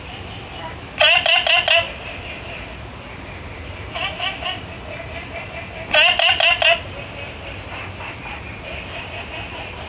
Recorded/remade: recorded